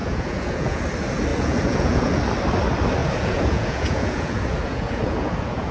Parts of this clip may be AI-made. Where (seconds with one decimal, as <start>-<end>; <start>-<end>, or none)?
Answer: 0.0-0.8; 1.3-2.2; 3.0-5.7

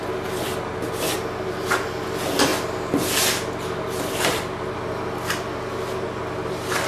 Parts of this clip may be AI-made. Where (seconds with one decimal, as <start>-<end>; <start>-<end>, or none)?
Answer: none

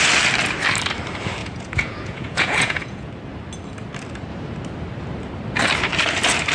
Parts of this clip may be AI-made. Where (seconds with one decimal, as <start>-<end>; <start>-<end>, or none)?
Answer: 1.4-3.1

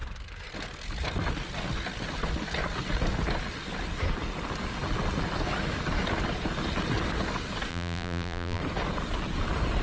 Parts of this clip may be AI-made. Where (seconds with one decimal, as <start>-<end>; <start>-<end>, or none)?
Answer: 7.7-8.6